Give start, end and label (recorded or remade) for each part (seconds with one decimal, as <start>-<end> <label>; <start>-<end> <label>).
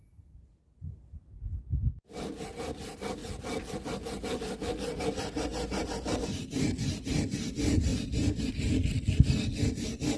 0.0-3.2 recorded; 3.2-4.5 remade; 4.5-5.8 recorded; 5.8-6.4 remade; 6.4-7.9 recorded; 7.9-8.5 remade; 8.5-10.2 recorded